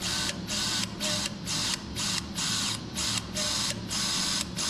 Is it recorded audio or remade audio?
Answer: recorded